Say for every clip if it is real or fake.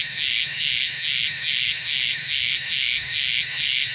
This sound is fake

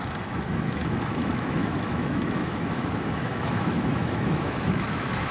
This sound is fake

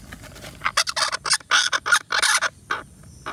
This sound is real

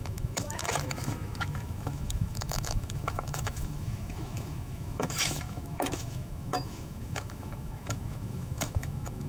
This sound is fake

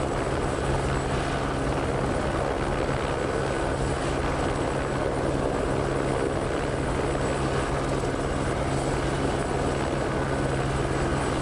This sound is real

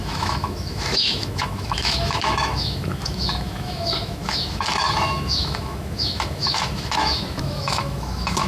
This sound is fake